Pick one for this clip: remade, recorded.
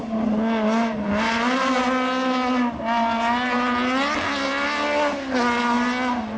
recorded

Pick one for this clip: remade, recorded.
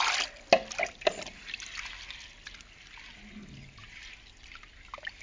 recorded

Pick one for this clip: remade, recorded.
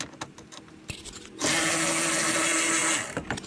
recorded